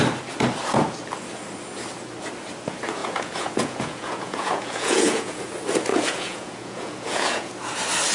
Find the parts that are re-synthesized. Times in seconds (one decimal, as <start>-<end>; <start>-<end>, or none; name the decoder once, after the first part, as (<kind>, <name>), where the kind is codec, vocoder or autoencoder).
3.0-5.5 (vocoder, Vocos); 5.9-7.5